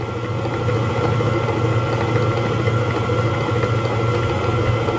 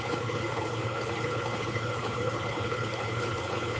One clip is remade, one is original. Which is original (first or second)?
first